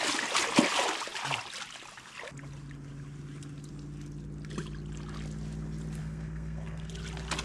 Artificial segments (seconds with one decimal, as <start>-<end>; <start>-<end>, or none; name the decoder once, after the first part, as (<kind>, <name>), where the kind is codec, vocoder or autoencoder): 6.0-6.9 (codec, SNAC)